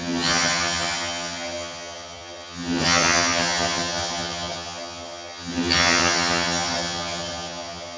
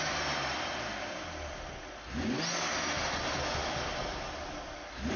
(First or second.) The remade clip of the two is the first